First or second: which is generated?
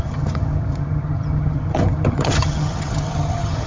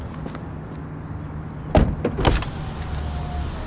first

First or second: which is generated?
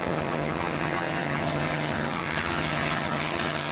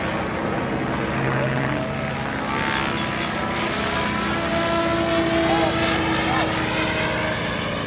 first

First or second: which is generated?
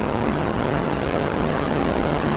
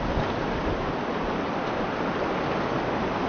first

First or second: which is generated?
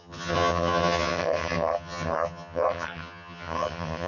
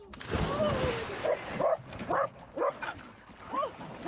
first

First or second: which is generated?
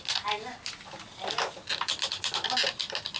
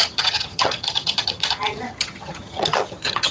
second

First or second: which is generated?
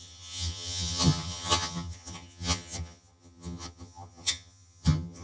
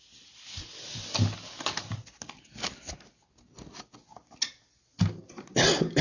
first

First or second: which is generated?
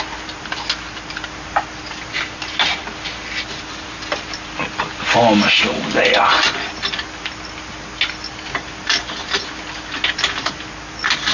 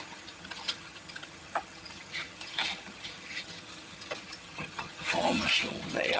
second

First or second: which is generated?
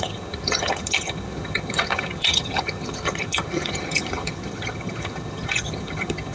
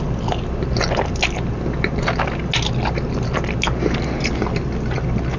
first